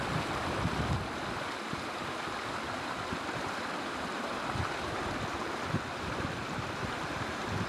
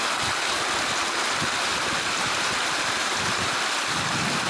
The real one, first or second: second